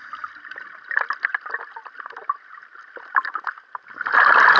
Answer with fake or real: real